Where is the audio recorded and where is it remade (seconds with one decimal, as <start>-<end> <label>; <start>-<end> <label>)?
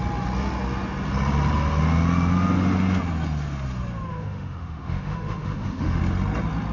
0.0-4.1 recorded; 4.1-6.0 remade; 6.0-6.7 recorded